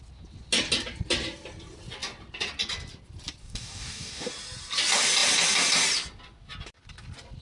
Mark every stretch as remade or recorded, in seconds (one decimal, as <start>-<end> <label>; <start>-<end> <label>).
0.0-3.4 recorded; 3.4-4.3 remade; 4.3-7.4 recorded